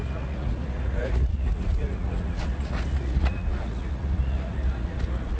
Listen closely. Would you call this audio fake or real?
fake